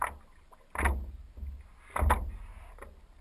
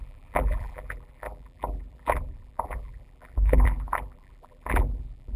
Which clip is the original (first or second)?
first